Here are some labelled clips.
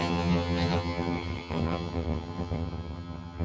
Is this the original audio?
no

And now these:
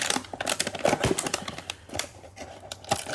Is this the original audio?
yes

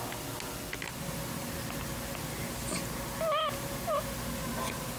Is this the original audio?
yes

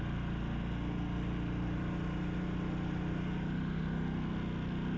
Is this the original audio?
yes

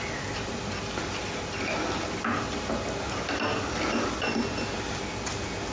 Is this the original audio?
yes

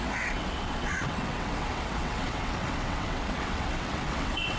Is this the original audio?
no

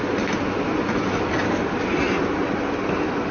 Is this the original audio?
yes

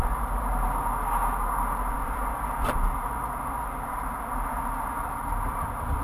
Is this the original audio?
no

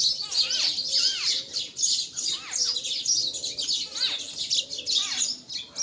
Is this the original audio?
yes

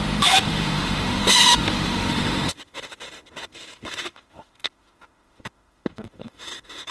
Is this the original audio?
no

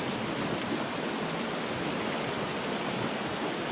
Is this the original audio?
no